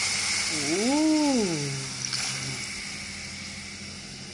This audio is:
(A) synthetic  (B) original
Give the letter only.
B